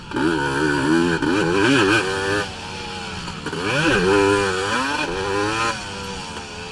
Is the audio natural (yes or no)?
yes